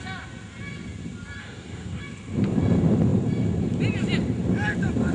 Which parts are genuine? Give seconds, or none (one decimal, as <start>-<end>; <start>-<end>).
0.0-1.4; 2.0-5.1